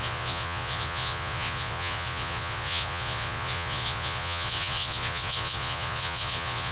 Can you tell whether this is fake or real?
fake